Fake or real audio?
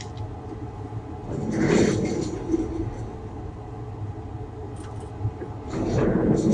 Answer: real